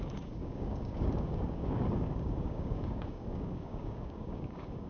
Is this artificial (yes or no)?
yes